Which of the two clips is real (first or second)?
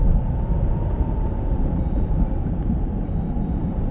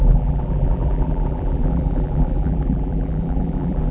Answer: first